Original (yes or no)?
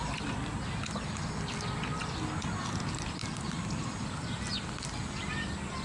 yes